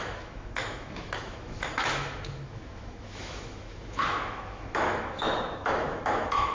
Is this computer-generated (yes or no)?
yes